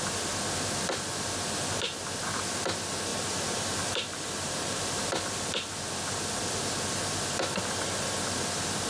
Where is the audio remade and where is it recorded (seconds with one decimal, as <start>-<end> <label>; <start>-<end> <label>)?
0.0-3.1 recorded; 3.1-5.0 remade; 5.0-8.9 recorded